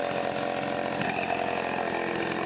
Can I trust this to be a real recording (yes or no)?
yes